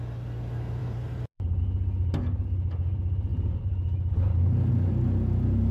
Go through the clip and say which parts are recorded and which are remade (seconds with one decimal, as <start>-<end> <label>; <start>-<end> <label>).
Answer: 0.0-0.8 recorded; 0.8-1.6 remade; 1.6-5.7 recorded